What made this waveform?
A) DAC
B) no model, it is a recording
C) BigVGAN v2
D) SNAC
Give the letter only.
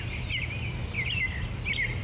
B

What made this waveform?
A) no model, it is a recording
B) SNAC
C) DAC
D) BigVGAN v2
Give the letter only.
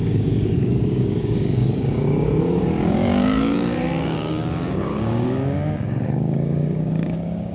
C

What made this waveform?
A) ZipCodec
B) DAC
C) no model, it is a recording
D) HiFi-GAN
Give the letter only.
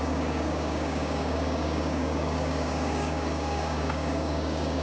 B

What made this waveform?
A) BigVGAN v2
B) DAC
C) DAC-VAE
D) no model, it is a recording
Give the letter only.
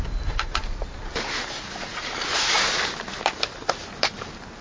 D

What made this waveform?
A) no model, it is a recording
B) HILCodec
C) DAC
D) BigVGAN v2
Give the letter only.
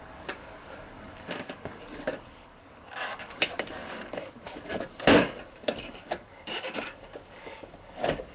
C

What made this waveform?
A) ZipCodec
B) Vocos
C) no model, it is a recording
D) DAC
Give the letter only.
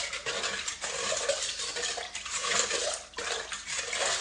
C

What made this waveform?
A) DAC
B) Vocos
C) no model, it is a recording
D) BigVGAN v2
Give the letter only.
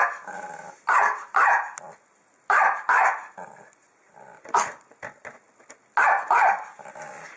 C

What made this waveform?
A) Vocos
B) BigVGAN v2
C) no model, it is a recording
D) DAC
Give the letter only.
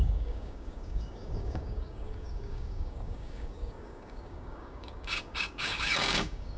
D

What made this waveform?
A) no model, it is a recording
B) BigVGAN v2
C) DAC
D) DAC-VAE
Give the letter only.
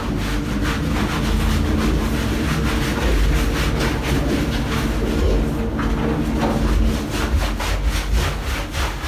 A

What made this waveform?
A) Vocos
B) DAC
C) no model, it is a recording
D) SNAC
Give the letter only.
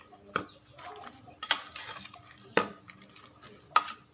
C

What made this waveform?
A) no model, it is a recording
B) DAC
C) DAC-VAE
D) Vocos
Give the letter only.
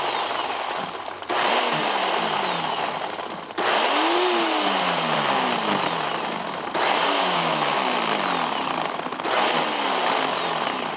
A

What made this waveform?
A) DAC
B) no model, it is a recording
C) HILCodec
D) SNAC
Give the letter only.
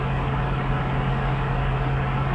A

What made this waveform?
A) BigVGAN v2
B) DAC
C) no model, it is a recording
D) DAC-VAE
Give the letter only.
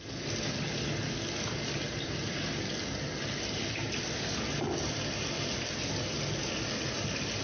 C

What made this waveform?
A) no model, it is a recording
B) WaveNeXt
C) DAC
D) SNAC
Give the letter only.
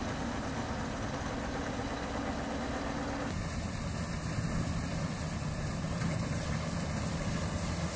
A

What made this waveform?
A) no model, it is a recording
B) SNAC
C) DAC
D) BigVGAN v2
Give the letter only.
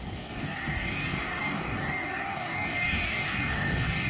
C